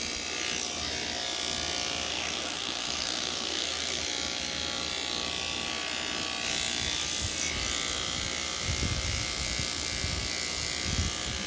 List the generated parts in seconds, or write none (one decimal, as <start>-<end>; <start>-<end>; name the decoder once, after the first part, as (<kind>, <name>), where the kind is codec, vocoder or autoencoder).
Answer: 2.1-4.0 (codec, SNAC)